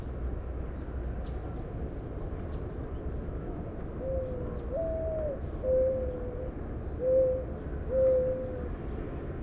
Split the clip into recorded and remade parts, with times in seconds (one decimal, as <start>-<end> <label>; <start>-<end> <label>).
0.0-9.4 recorded